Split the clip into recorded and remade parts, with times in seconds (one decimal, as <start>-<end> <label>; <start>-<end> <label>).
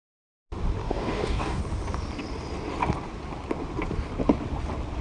0.0-0.8 recorded; 0.8-1.6 remade; 1.6-5.0 recorded